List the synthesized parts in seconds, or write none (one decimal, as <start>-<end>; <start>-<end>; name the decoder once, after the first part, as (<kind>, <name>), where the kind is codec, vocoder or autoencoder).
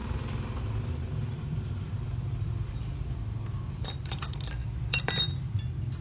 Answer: 0.0-2.7 (vocoder, BigVGAN v2); 4.6-5.3